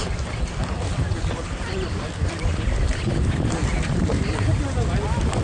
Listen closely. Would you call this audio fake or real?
real